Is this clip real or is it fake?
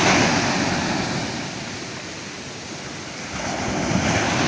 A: real